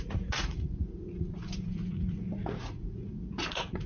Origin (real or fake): fake